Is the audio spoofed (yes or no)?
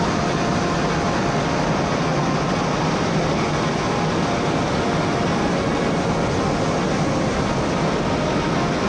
no